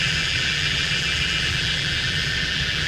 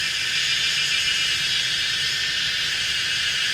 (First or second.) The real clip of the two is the second